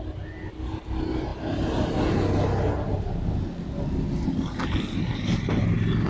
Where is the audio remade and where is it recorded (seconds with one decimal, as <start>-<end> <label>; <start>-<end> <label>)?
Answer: 0.0-6.1 recorded